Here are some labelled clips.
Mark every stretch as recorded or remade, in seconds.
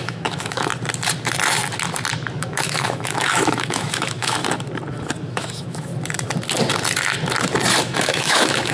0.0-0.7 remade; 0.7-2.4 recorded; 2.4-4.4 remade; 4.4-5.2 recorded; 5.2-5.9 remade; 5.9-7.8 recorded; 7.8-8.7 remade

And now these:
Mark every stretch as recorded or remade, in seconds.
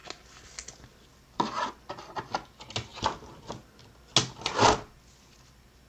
0.0-0.9 recorded; 0.9-1.7 remade; 1.7-2.9 recorded; 2.9-3.8 remade; 3.8-5.9 recorded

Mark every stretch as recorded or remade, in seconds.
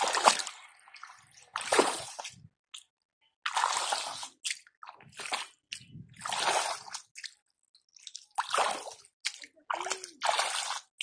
0.0-1.7 recorded; 1.7-2.2 remade; 2.2-11.0 recorded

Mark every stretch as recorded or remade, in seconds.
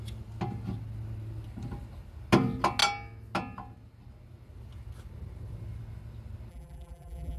0.0-6.5 recorded; 6.5-7.4 remade